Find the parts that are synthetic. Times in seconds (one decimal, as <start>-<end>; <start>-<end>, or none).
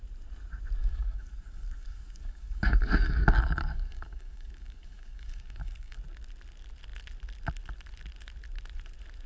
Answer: 0.8-6.0